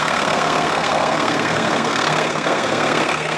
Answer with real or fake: fake